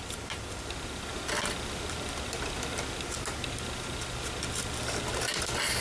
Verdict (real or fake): real